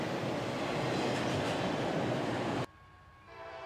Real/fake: real